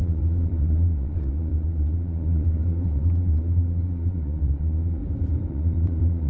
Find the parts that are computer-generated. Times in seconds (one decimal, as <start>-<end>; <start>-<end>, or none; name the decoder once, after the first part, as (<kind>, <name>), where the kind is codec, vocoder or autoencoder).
0.0-5.0 (vocoder, Vocos); 5.5-6.3